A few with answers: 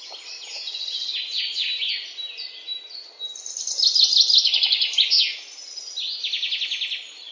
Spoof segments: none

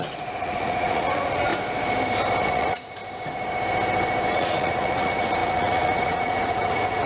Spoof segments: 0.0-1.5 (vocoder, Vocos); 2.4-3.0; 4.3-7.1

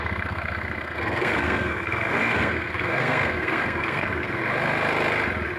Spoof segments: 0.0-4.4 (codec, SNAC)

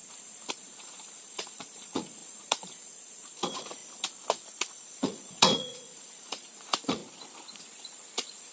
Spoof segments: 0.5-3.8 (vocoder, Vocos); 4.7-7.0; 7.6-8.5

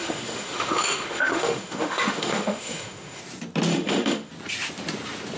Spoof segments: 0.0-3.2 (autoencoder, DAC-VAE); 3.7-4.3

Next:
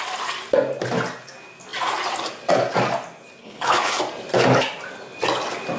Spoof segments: 3.4-4.0 (codec, HILCodec)

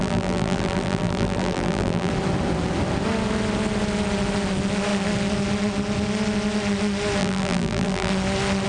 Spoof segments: 0.0-2.1 (vocoder, BigVGAN v2); 7.2-8.1

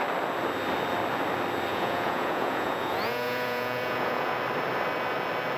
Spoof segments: 1.7-4.4 (vocoder, Vocos)